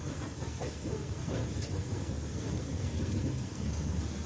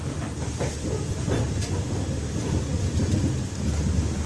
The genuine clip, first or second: second